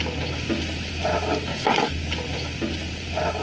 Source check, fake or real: real